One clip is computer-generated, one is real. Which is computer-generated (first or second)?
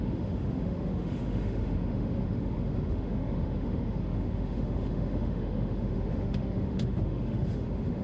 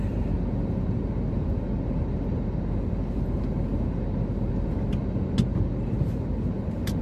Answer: first